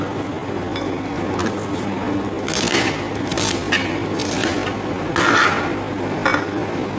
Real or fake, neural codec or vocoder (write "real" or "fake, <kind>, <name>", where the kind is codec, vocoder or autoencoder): real